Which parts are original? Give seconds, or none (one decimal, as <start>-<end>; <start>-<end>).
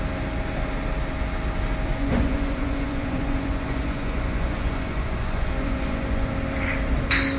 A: 0.0-1.9; 6.3-7.4